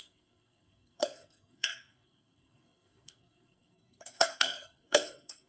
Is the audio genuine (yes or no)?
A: no